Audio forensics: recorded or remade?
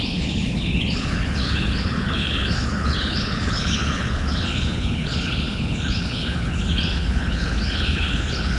remade